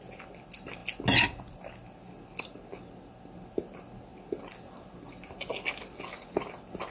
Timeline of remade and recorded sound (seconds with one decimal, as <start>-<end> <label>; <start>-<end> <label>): 0.0-6.9 recorded